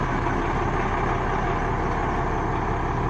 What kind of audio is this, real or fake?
real